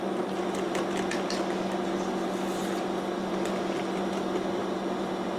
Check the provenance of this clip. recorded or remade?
recorded